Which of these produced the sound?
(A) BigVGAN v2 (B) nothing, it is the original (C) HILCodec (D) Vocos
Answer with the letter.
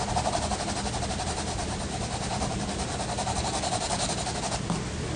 B